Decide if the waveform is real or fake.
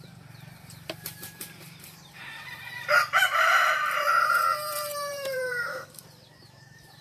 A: fake